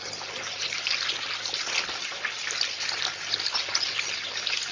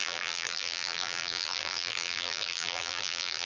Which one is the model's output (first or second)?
second